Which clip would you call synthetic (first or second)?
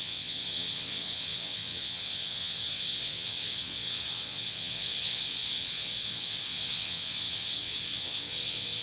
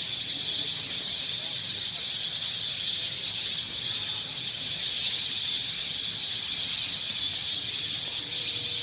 first